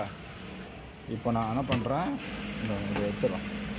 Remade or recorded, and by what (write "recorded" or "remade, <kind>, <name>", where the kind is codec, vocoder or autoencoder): recorded